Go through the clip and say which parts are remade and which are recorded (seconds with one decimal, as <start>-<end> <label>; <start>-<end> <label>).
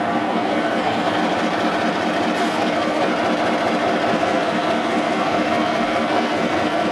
0.0-1.2 remade; 1.2-2.4 recorded; 2.4-3.1 remade; 3.1-4.1 recorded; 4.1-6.9 remade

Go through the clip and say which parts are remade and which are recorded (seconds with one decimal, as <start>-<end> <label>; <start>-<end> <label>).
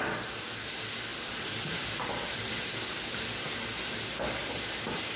0.0-1.1 recorded; 1.1-3.1 remade; 3.1-5.2 recorded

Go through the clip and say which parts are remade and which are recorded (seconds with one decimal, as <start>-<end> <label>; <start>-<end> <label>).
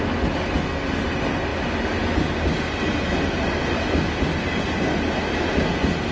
0.0-6.1 recorded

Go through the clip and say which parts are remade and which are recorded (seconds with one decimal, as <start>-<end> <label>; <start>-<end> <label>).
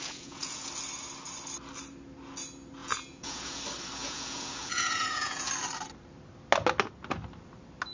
0.0-0.7 remade; 0.7-2.8 recorded; 2.8-3.6 remade; 3.6-4.0 recorded; 4.0-5.5 remade; 5.5-7.9 recorded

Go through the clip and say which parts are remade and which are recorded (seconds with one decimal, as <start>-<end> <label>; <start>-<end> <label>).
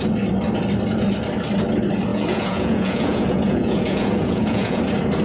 0.0-2.1 recorded; 2.1-4.8 remade; 4.8-5.2 recorded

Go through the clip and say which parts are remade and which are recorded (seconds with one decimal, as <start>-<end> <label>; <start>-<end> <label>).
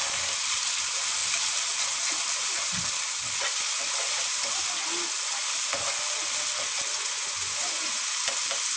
0.0-6.9 recorded; 6.9-8.0 remade; 8.0-8.8 recorded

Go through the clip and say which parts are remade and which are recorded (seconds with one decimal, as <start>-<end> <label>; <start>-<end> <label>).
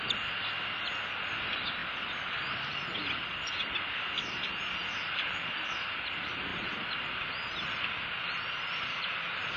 0.0-1.8 recorded; 1.8-4.2 remade; 4.2-9.6 recorded